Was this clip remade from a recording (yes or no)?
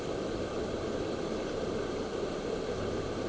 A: no